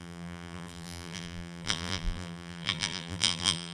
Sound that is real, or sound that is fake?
fake